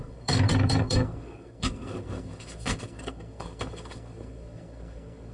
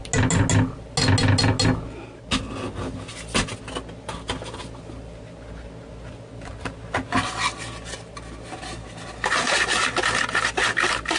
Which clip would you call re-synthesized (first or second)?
first